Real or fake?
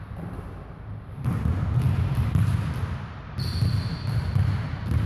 fake